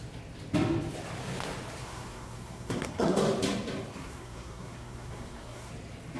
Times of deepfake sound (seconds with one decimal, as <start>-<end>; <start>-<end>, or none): 1.8-3.2; 3.9-5.7